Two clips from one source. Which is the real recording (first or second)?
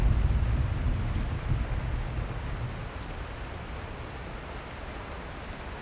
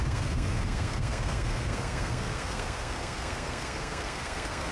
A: first